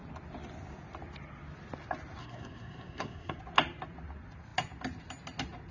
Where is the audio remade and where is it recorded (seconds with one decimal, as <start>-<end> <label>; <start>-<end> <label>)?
0.0-2.2 recorded; 2.2-3.4 remade; 3.4-5.7 recorded